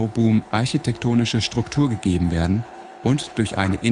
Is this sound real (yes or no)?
no